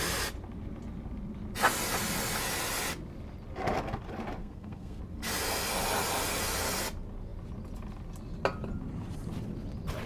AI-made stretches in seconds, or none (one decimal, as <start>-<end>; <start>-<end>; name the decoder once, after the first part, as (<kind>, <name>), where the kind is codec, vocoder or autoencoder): 4.4-5.0 (codec, SNAC)